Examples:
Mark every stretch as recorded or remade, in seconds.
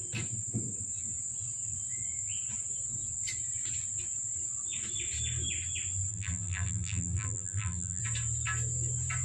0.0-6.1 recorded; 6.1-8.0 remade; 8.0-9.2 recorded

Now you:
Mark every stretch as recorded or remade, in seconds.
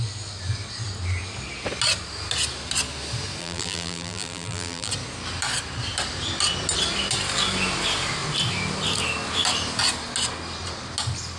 0.0-3.4 recorded; 3.4-4.9 remade; 4.9-11.4 recorded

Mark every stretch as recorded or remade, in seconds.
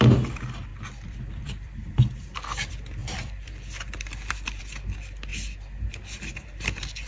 0.0-0.7 recorded; 0.7-2.2 remade; 2.2-3.0 recorded; 3.0-4.6 remade; 4.6-7.1 recorded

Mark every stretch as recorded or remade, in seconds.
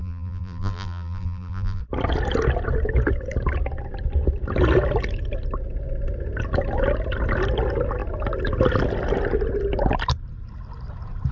0.0-1.8 remade; 1.8-11.3 recorded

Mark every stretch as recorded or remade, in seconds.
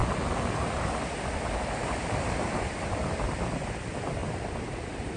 0.0-4.2 recorded; 4.2-5.2 remade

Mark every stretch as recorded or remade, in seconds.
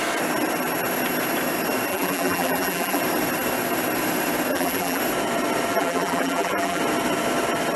0.0-1.9 recorded; 1.9-3.0 remade; 3.0-4.5 recorded; 4.5-5.0 remade; 5.0-5.7 recorded; 5.7-6.8 remade; 6.8-7.8 recorded